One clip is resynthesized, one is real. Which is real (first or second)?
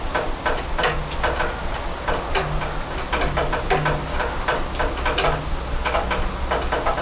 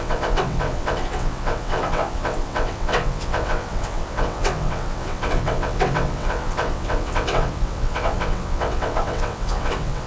first